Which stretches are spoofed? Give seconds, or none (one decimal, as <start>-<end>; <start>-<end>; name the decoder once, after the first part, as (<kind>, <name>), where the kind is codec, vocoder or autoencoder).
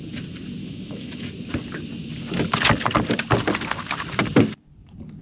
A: 0.6-1.3 (autoencoder, DAC-VAE)